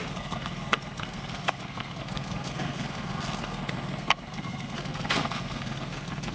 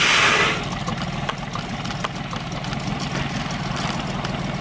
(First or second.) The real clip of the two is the second